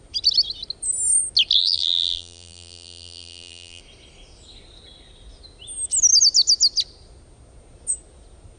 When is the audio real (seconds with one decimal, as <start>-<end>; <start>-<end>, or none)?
0.0-1.6; 3.8-8.6